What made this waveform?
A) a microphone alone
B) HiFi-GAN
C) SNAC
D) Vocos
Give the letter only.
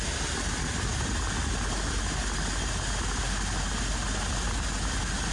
A